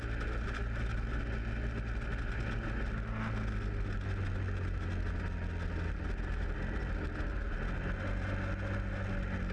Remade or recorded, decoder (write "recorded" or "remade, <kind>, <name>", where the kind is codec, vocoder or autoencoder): recorded